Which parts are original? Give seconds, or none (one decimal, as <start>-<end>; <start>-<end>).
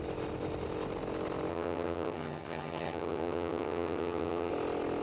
0.0-1.5; 4.5-5.0